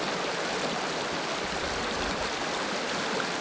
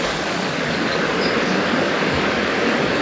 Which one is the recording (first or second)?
first